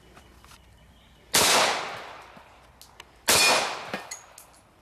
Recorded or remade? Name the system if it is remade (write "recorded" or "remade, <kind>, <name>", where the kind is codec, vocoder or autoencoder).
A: recorded